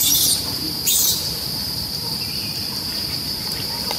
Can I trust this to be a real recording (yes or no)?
no